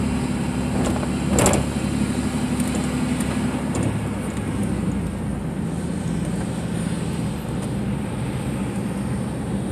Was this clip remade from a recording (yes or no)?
no